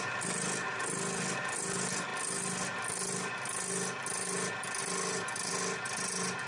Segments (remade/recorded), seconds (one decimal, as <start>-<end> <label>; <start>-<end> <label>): 0.0-6.5 recorded